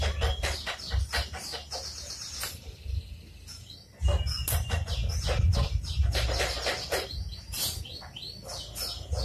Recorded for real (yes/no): yes